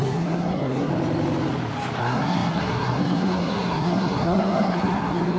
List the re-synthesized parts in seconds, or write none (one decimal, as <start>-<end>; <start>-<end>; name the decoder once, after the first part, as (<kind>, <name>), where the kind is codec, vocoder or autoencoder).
0.0-0.9 (codec, SNAC); 2.0-5.4

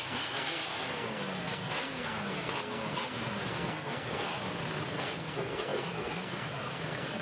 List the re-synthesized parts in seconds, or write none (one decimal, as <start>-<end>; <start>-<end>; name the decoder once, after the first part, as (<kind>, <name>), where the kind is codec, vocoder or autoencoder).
0.0-4.3 (codec, SNAC); 4.9-7.2

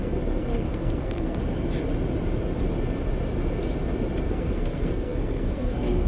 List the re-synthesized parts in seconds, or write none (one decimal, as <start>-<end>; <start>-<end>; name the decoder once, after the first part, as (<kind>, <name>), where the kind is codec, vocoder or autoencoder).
0.0-1.4 (codec, SNAC); 4.3-6.1

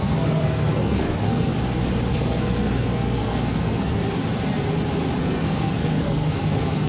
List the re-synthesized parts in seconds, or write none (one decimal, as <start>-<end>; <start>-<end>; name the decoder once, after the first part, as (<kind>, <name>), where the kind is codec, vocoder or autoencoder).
0.0-1.5 (codec, SNAC); 2.1-4.0; 5.2-6.9

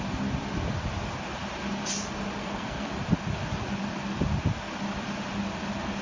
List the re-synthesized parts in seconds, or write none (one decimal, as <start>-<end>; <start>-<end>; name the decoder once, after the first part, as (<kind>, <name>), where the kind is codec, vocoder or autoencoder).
2.4-2.9 (codec, SNAC)

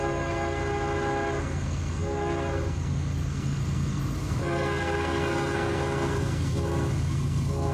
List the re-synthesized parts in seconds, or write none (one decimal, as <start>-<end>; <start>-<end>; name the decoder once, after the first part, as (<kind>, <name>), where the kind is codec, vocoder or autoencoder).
0.0-0.6 (codec, SNAC); 1.4-7.7